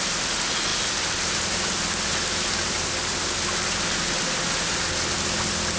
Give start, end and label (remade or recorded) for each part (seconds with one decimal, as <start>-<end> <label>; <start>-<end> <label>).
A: 0.0-5.8 recorded